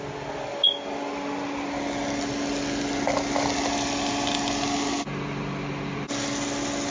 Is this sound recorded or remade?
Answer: recorded